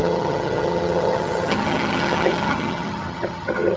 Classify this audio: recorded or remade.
remade